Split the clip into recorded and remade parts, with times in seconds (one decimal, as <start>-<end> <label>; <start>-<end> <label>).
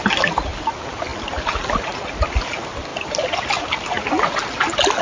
0.0-5.0 recorded